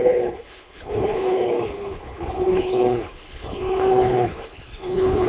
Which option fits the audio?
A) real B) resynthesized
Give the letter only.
B